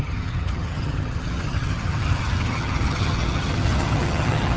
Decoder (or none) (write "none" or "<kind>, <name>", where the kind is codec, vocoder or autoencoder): vocoder, HiFi-GAN